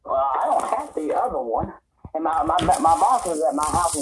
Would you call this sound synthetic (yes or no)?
no